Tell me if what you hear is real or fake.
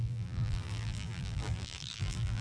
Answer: fake